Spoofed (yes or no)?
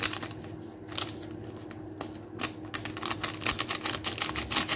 no